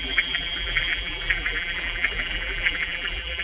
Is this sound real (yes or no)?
no